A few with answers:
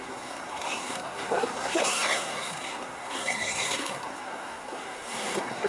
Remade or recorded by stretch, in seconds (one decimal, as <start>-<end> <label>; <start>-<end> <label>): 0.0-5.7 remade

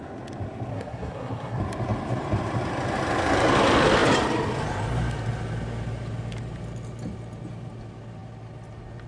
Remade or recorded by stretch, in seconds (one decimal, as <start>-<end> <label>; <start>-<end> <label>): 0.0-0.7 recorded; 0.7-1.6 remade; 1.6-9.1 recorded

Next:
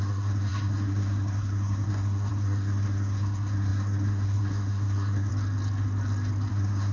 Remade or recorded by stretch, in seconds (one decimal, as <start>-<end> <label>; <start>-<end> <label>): 0.0-5.3 remade; 5.3-6.5 recorded; 6.5-6.9 remade

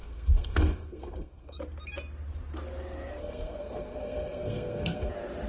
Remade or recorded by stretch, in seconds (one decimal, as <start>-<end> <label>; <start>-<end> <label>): 0.0-1.6 remade; 1.6-3.2 recorded; 3.2-5.1 remade; 5.1-5.5 recorded

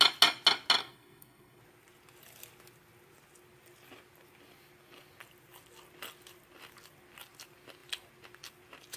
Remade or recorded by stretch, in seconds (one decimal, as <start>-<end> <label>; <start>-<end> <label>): 0.0-0.8 recorded; 0.8-1.6 remade; 1.6-9.0 recorded

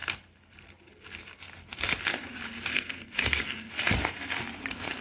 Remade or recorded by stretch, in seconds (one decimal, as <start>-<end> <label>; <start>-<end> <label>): 0.0-2.7 recorded; 2.7-3.7 remade; 3.7-5.0 recorded

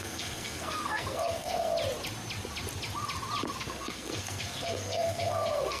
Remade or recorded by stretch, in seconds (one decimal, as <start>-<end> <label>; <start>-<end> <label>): 0.0-1.7 remade; 1.7-3.6 recorded; 3.6-5.8 remade